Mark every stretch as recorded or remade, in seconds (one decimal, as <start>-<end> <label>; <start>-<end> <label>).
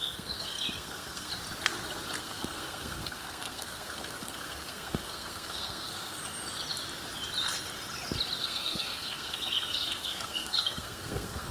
0.0-1.3 remade; 1.3-2.2 recorded; 2.2-6.2 remade; 6.2-8.4 recorded; 8.4-11.5 remade